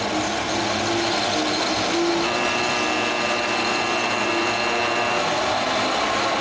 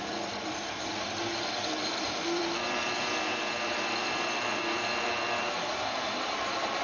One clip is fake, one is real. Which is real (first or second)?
first